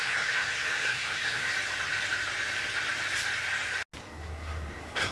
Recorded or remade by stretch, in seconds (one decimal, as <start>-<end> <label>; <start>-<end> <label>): 0.0-1.5 remade; 1.5-4.0 recorded; 4.0-5.1 remade